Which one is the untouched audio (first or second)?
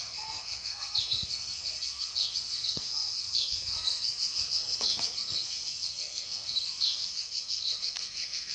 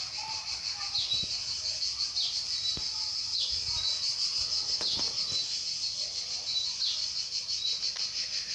second